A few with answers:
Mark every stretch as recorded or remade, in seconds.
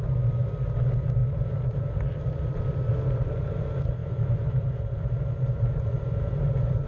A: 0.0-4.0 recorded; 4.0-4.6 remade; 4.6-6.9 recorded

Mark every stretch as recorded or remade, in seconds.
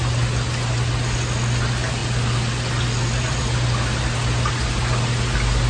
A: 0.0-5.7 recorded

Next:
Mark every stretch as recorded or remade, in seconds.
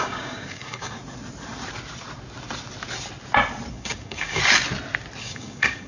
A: 0.0-1.0 remade; 1.0-3.7 recorded; 3.7-4.4 remade; 4.4-5.2 recorded; 5.2-5.9 remade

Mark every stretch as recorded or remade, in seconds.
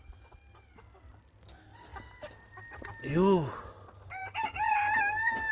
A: 0.0-5.5 recorded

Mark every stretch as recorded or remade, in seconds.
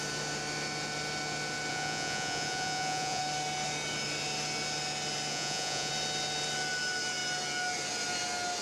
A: 0.0-1.7 recorded; 1.7-3.2 remade; 3.2-5.3 recorded; 5.3-5.9 remade; 5.9-8.6 recorded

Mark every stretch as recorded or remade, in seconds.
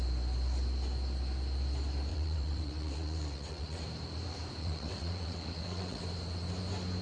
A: 0.0-2.1 recorded; 2.1-3.8 remade; 3.8-4.6 recorded; 4.6-6.0 remade; 6.0-7.0 recorded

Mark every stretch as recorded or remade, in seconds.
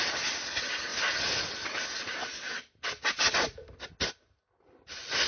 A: 0.0-5.3 recorded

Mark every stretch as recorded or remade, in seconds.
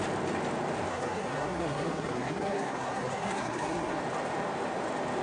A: 0.0-0.9 recorded; 0.9-4.0 remade; 4.0-5.2 recorded